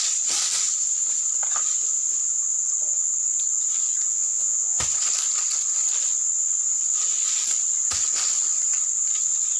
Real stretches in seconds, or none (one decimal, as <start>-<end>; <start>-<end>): 0.0-4.1; 4.8-9.6